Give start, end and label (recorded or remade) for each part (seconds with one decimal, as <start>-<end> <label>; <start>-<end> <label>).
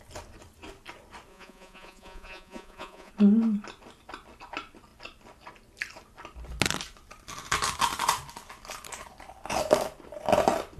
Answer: 0.0-1.3 recorded; 1.3-3.1 remade; 3.1-10.8 recorded